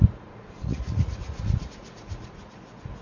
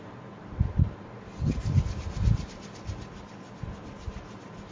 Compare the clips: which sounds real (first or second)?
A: second